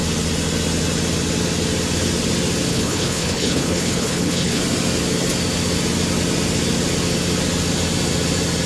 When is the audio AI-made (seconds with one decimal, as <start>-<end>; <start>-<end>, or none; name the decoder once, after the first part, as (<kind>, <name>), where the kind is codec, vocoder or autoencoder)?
2.7-4.6 (codec, HILCodec)